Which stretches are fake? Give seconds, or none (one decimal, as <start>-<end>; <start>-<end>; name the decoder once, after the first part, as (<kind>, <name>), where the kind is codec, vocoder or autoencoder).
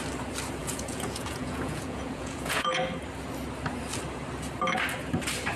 0.6-2.8 (vocoder, Vocos)